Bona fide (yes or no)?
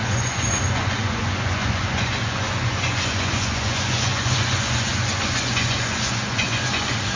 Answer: no